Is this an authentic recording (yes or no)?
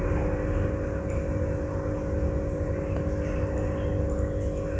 yes